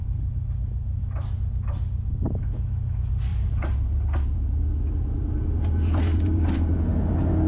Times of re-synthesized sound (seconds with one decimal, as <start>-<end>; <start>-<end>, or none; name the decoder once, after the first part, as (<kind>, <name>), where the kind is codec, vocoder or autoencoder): 3.3-5.5 (vocoder, BigVGAN v2); 6.1-6.9